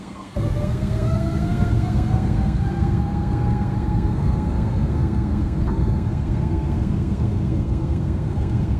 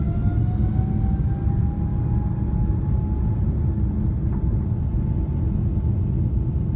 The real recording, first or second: second